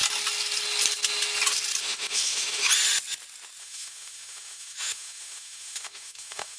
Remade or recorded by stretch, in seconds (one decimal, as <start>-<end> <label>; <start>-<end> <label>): 0.0-1.8 recorded; 1.8-2.7 remade; 2.7-3.6 recorded; 3.6-6.6 remade